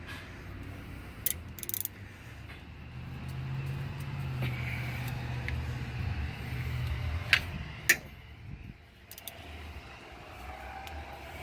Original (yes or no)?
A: yes